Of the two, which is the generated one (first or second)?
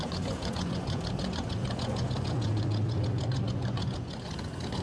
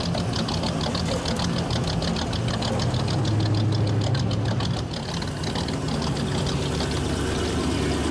first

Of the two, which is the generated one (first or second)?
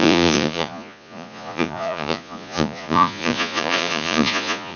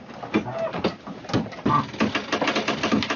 first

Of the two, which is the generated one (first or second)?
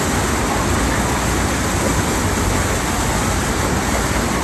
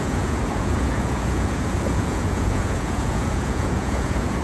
second